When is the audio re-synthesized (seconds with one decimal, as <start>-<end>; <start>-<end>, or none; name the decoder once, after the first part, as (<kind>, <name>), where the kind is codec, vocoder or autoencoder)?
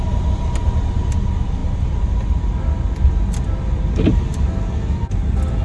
none